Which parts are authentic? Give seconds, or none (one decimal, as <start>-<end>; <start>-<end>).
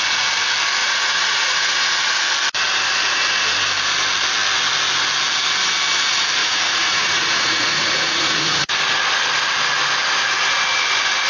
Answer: 0.0-0.8; 2.2-6.4; 8.7-11.3